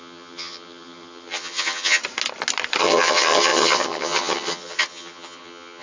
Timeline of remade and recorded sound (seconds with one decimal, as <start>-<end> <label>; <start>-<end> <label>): 0.0-2.0 remade; 2.0-2.8 recorded; 2.8-5.8 remade